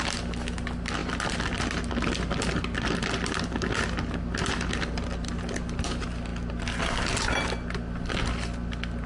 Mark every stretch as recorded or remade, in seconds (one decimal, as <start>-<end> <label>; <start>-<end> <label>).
0.0-9.1 recorded